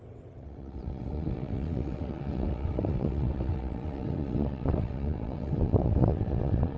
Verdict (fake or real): fake